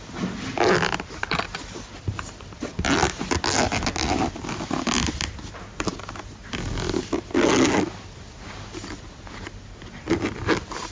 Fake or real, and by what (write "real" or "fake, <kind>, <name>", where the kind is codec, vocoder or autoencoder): real